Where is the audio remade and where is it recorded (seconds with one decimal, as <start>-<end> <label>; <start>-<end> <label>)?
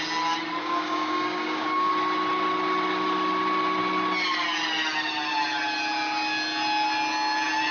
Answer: 0.0-0.6 recorded; 0.6-1.9 remade; 1.9-7.7 recorded